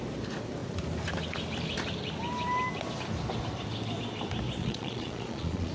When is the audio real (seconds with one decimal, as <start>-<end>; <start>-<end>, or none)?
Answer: 0.0-4.6